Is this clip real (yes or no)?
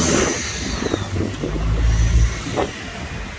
yes